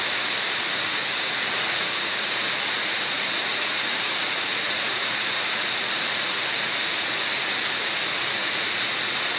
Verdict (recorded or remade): remade